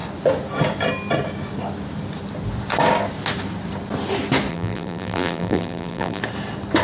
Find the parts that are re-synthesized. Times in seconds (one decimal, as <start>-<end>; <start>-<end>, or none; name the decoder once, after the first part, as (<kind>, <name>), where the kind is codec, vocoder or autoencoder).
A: 4.5-6.2 (vocoder, BigVGAN v2)